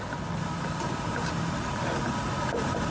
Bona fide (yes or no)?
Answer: yes